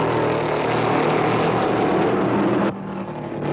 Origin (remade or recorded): recorded